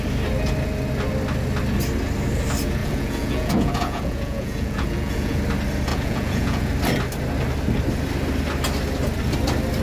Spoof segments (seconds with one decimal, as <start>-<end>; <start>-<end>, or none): 2.8-5.4; 5.9-6.7

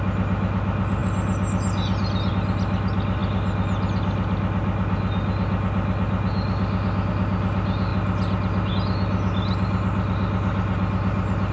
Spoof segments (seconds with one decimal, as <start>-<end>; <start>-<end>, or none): none

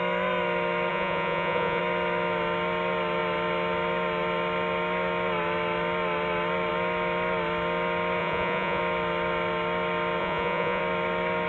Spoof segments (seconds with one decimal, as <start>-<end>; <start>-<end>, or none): 0.9-1.8; 8.2-8.8; 10.2-10.8

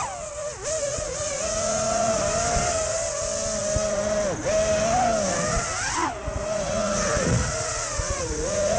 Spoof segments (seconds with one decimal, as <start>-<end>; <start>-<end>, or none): 0.9-2.2; 6.0-8.8